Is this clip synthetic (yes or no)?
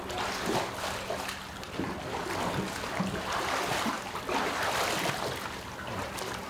no